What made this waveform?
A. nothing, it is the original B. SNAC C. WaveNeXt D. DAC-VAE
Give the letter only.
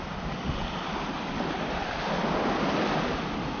A